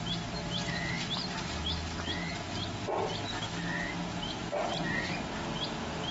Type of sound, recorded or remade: recorded